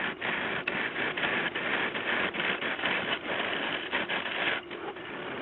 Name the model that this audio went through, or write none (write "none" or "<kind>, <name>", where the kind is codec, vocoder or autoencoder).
none